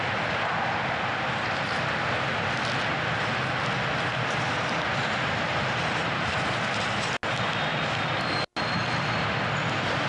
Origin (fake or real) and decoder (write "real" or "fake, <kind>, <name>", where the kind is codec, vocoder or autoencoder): real